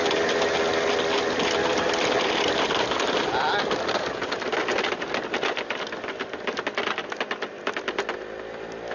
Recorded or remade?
recorded